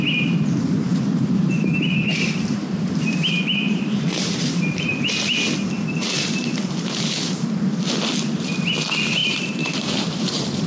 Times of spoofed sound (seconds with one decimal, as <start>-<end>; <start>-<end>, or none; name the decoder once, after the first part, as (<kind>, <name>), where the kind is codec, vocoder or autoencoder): 0.9-1.7 (vocoder, BigVGAN v2); 2.1-4.4; 9.2-10.7